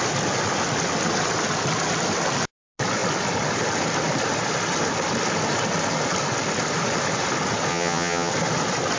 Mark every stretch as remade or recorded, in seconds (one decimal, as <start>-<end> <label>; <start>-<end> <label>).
0.0-7.7 recorded; 7.7-8.3 remade; 8.3-9.0 recorded